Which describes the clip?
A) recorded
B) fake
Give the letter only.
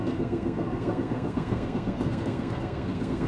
B